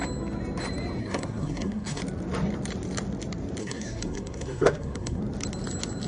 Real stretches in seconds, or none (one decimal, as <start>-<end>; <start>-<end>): 0.0-1.0; 2.0-3.6; 5.2-6.1